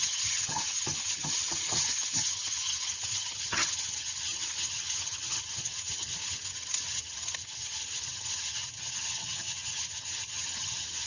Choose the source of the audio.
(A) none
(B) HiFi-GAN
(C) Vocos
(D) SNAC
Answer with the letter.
B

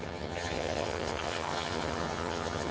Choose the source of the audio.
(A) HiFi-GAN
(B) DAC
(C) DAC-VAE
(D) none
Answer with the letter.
A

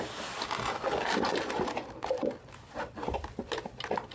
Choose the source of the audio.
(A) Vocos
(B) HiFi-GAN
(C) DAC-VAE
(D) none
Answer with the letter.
D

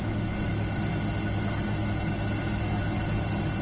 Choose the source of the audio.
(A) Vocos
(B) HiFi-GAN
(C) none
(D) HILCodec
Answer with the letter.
C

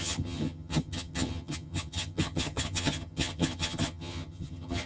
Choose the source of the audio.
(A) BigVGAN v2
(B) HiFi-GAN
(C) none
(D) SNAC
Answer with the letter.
B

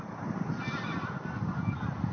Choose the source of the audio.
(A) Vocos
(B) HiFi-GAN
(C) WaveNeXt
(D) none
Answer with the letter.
D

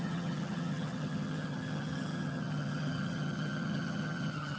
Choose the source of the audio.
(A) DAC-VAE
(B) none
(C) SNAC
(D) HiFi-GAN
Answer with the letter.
D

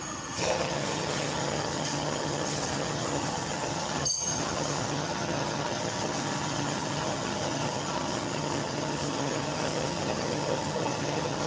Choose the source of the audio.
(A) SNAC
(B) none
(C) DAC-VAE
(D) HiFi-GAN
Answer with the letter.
D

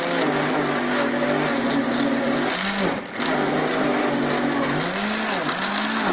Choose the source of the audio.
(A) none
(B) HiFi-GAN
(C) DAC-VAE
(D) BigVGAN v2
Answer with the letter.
A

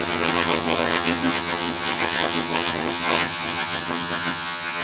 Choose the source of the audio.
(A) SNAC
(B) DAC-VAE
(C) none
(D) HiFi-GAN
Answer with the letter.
D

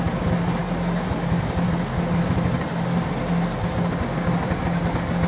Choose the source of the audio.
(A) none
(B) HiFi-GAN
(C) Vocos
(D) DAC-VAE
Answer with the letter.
A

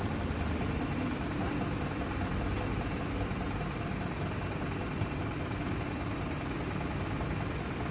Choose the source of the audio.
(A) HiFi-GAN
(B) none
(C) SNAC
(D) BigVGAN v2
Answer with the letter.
B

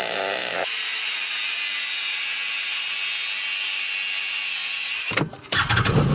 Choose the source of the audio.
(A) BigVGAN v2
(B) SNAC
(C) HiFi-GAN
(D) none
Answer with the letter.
D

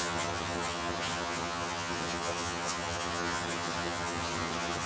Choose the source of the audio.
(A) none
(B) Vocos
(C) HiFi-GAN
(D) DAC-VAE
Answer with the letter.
C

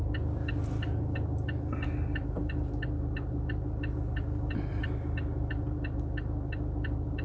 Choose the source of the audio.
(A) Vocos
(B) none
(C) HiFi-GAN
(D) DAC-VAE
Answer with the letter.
B